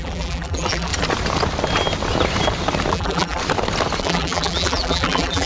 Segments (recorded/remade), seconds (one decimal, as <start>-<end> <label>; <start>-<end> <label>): 0.0-0.9 remade; 0.9-2.9 recorded; 2.9-3.4 remade; 3.4-4.0 recorded; 4.0-5.5 remade